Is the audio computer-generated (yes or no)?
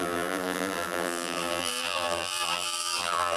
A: yes